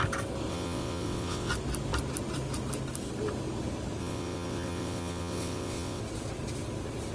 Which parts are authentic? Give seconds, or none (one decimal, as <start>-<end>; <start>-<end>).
0.0-0.5; 1.5-4.0; 6.0-7.1

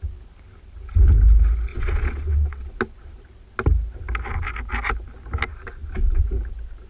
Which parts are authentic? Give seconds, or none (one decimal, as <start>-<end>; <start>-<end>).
0.0-1.7; 2.8-6.9

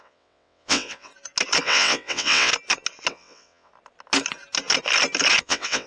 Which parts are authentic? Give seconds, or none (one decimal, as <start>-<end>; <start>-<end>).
1.1-1.6; 2.5-3.1; 3.7-5.4

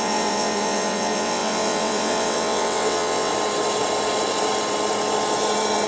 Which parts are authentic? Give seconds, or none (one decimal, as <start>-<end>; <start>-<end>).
3.3-5.9

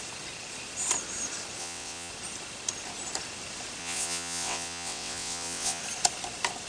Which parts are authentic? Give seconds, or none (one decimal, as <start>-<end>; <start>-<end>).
0.0-1.6; 2.1-3.8; 5.8-6.7

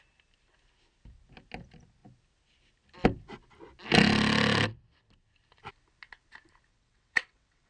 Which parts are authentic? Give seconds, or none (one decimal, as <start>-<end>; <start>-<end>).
0.0-6.7

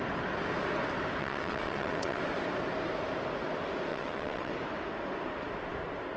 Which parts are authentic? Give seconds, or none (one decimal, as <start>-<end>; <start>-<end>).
0.0-1.2; 2.2-3.9; 4.5-6.2